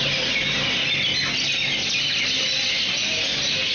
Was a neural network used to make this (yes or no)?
no